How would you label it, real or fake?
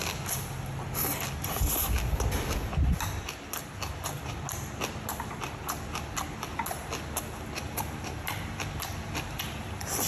real